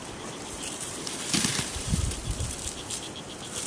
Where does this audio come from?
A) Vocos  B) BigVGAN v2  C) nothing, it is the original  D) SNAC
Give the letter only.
B